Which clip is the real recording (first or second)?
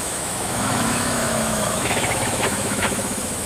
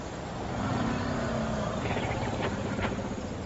second